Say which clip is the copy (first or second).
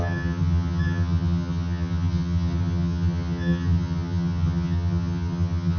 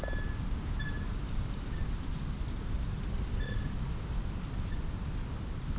first